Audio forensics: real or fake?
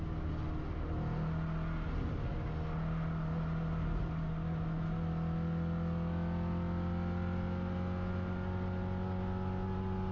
real